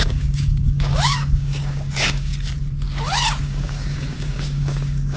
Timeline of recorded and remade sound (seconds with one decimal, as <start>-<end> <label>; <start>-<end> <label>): 0.0-2.3 remade; 2.3-3.4 recorded; 3.4-5.2 remade